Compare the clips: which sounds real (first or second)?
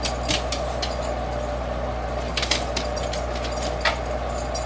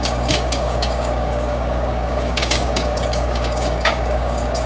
first